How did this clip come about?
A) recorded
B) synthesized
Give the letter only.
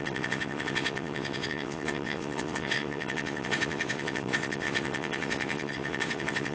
B